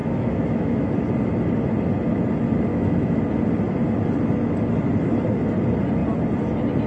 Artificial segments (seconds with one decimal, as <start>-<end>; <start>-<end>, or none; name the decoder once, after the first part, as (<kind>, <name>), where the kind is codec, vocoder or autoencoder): 0.0-0.9 (autoencoder, DAC-VAE); 2.7-3.2

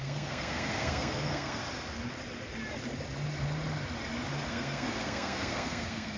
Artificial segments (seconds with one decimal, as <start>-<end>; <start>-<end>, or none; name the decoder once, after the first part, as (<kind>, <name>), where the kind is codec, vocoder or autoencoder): 0.0-1.6 (codec, SNAC); 4.5-6.2

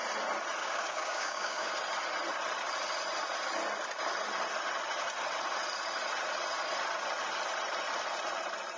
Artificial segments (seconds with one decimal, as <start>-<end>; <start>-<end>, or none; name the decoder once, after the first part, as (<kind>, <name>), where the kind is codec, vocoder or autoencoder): 0.6-1.7 (codec, DAC)

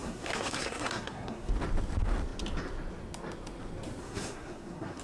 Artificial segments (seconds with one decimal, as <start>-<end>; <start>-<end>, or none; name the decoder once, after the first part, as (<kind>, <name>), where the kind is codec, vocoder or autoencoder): 0.0-1.5 (codec, SNAC); 4.0-5.0

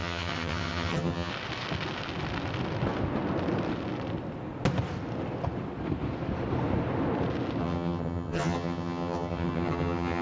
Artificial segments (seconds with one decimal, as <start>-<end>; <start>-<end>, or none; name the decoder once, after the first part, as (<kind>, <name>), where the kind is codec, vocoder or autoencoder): 0.0-1.3 (vocoder, HiFi-GAN); 7.6-10.2

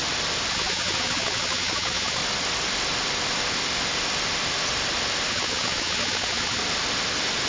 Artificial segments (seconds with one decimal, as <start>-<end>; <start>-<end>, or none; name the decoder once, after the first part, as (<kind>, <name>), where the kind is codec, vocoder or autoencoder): 0.5-2.2 (vocoder, BigVGAN v2); 5.3-6.6